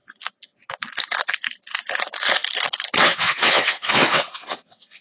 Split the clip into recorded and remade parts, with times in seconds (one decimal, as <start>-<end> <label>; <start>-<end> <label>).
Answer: 0.0-3.0 recorded; 3.0-5.0 remade